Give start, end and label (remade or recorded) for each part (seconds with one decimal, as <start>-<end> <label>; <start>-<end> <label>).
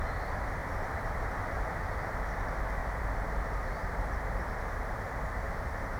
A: 0.0-0.6 recorded; 0.6-1.8 remade; 1.8-2.8 recorded; 2.8-6.0 remade